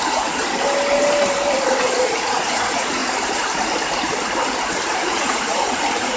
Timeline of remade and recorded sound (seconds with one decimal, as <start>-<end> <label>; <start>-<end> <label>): 0.0-0.4 remade; 0.4-2.0 recorded; 2.0-3.0 remade; 3.0-5.0 recorded; 5.0-6.2 remade